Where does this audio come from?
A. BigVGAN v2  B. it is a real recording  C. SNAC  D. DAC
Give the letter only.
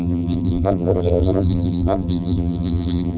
A